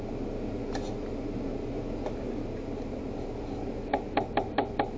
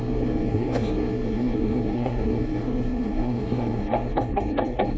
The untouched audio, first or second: first